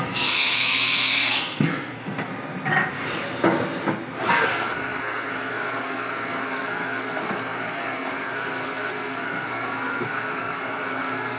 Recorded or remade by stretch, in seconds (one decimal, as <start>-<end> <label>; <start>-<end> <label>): 0.0-2.3 remade; 2.3-4.3 recorded; 4.3-11.4 remade